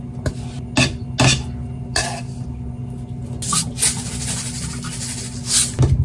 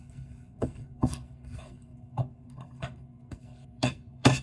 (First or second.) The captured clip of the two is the first